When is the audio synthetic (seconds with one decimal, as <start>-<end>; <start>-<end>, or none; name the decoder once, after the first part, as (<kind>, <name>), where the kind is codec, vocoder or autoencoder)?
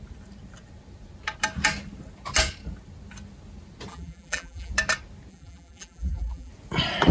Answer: 3.9-4.7 (vocoder, BigVGAN v2); 5.3-6.5